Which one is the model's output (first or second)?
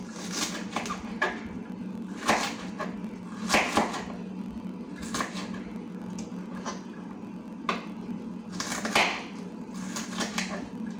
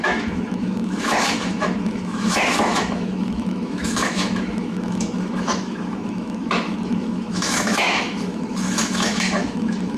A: second